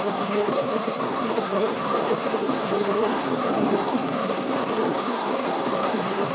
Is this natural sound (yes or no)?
no